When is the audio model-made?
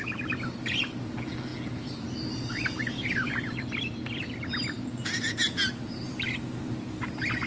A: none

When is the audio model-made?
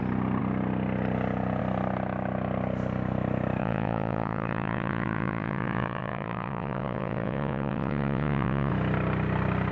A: 3.6-8.7 (vocoder, WaveNeXt)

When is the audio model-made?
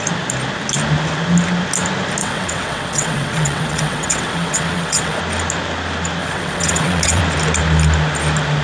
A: 2.2-5.2 (vocoder, WaveNeXt); 6.2-7.2